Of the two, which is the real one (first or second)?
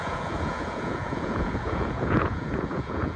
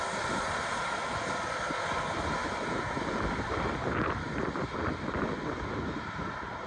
second